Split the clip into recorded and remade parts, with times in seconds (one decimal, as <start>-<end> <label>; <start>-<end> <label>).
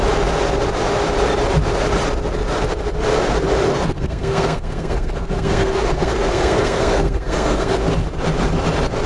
0.0-3.7 recorded; 3.7-7.7 remade; 7.7-9.1 recorded